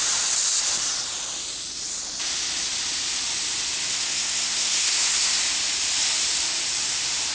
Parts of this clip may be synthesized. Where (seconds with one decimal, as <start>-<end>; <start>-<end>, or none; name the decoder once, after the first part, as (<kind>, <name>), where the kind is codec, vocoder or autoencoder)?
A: 3.9-5.4 (codec, SNAC)